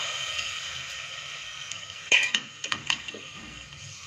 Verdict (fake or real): fake